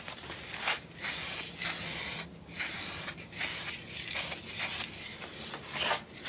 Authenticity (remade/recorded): recorded